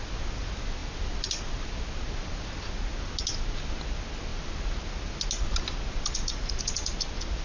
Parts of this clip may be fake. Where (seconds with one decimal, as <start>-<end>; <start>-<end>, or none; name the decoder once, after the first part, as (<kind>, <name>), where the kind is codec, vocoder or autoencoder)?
none